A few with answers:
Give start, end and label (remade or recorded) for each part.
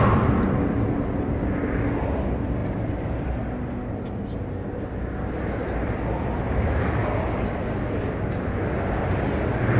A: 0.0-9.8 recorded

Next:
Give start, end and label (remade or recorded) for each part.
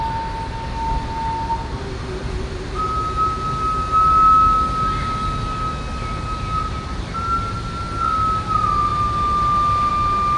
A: 0.0-10.4 recorded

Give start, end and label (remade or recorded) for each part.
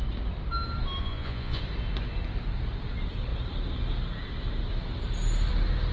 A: 0.0-1.0 recorded; 1.0-1.6 remade; 1.6-5.9 recorded